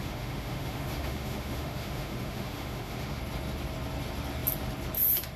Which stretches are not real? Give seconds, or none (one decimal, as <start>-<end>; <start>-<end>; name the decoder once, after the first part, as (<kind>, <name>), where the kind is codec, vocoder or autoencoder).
0.0-3.2 (autoencoder, DAC-VAE)